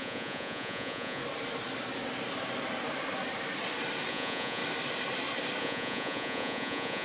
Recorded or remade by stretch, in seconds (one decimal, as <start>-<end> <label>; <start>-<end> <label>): 0.0-1.2 remade; 1.2-4.1 recorded; 4.1-4.6 remade; 4.6-5.6 recorded; 5.6-7.0 remade